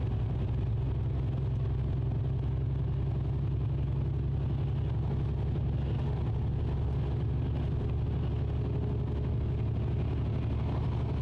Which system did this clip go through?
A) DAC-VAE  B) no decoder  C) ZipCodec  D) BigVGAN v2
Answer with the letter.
B